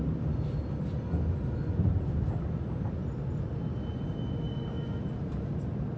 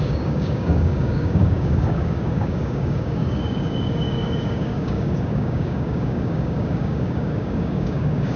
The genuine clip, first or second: first